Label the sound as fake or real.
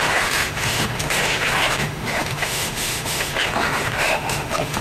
fake